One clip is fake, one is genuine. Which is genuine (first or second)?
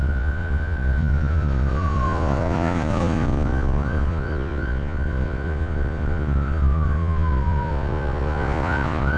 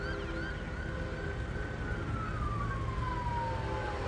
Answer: second